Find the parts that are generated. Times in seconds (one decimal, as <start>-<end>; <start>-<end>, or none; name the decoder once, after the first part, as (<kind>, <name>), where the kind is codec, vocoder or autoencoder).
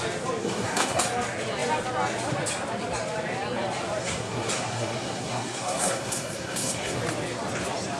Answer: 0.4-1.0 (codec, SNAC); 4.0-7.0